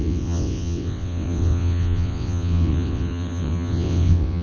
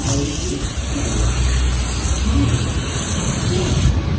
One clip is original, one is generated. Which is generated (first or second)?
first